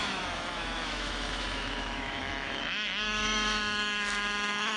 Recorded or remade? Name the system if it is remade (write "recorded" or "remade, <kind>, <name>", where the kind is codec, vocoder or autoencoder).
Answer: remade, autoencoder, DAC-VAE